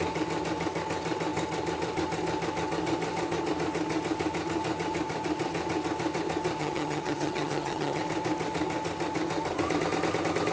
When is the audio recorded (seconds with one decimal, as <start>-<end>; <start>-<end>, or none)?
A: 0.0-6.6; 8.0-10.5

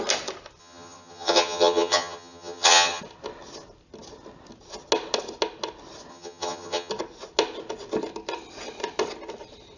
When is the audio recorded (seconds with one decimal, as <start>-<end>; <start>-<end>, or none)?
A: 0.0-0.6; 3.0-6.1; 6.9-9.8

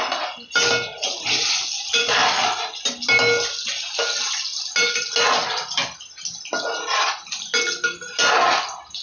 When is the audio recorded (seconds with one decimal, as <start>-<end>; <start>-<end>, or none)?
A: 0.0-9.0

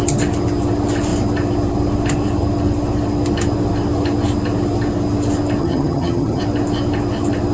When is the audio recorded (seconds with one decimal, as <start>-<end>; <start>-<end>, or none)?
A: 0.0-5.6; 6.4-7.5

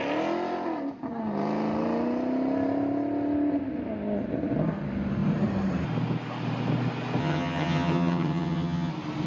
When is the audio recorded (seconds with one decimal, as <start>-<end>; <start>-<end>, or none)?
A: 0.0-7.2; 8.9-9.3

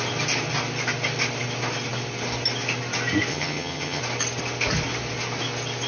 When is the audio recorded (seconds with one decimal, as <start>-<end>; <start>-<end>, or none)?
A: 0.0-3.3; 4.0-5.9

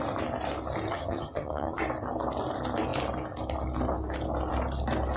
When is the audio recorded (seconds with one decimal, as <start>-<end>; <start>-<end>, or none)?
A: 0.0-0.9; 1.8-5.2